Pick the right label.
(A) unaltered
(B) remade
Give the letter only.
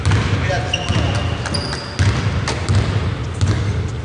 A